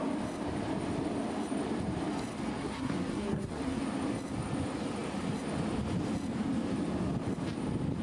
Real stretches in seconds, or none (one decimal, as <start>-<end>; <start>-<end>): 0.0-2.6; 3.8-8.0

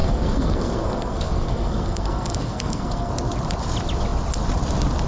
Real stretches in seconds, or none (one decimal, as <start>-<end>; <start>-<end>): 3.1-5.1

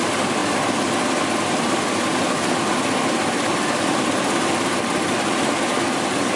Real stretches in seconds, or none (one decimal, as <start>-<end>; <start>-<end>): 0.0-6.3

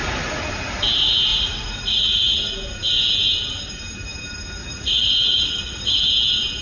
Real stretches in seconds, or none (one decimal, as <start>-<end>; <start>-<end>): 0.0-1.3; 2.5-4.6; 6.1-6.6

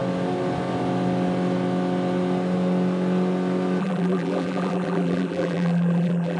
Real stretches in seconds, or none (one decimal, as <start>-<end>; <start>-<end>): 0.0-3.8

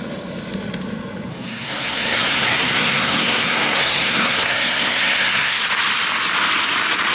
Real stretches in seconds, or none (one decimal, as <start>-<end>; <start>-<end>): 0.0-1.3; 5.6-7.1